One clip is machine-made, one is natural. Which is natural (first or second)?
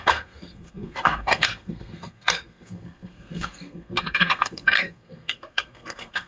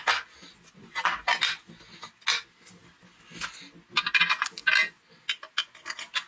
second